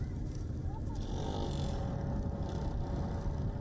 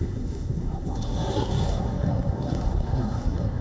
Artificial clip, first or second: second